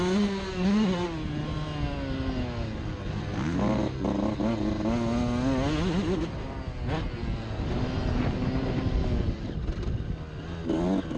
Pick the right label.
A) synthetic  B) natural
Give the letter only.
B